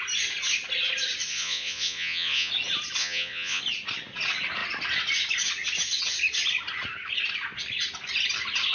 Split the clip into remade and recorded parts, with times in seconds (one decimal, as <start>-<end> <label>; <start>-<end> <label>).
0.0-1.3 recorded; 1.3-2.5 remade; 2.5-3.0 recorded; 3.0-3.6 remade; 3.6-8.7 recorded